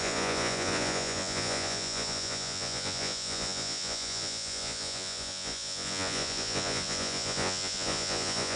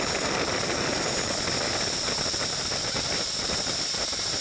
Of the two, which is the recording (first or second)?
second